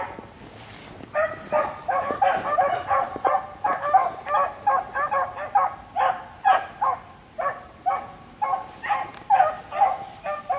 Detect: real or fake real